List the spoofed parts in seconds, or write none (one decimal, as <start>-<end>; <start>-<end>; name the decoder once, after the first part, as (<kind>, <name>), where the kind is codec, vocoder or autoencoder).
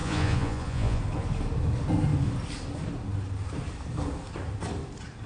0.0-1.0 (vocoder, Vocos)